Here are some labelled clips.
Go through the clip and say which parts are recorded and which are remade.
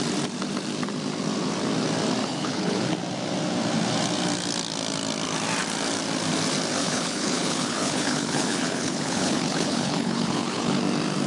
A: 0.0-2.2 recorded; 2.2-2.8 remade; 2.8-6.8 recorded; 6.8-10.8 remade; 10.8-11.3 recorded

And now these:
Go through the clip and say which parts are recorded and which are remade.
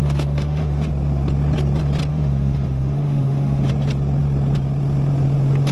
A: 0.0-0.9 remade; 0.9-2.1 recorded; 2.1-3.7 remade; 3.7-5.7 recorded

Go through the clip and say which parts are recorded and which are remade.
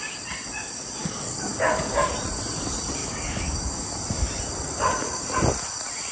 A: 0.0-1.0 recorded; 1.0-2.1 remade; 2.1-3.0 recorded; 3.0-4.0 remade; 4.0-6.1 recorded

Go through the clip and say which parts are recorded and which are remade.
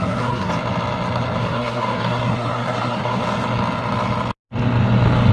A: 0.0-0.5 remade; 0.5-1.4 recorded; 1.4-3.2 remade; 3.2-5.3 recorded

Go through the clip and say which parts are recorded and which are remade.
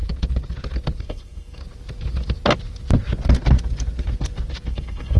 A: 0.0-1.0 recorded; 1.0-1.6 remade; 1.6-4.7 recorded; 4.7-5.2 remade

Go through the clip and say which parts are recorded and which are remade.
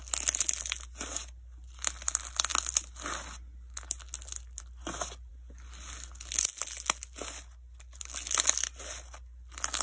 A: 0.0-9.8 recorded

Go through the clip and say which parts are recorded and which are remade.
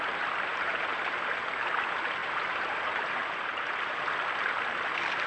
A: 0.0-0.5 recorded; 0.5-1.3 remade; 1.3-2.2 recorded; 2.2-4.0 remade; 4.0-5.3 recorded